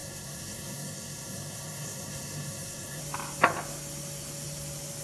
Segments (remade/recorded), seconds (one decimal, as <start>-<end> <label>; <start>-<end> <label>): 0.0-3.0 remade; 3.0-5.0 recorded